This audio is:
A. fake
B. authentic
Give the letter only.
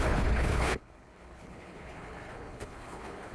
A